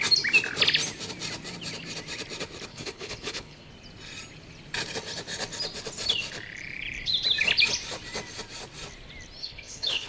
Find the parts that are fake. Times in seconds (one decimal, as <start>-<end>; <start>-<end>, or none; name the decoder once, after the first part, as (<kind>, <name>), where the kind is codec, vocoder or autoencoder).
2.7-3.7 (codec, HILCodec); 9.4-10.1